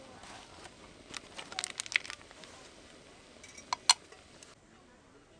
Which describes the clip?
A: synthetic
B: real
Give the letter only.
B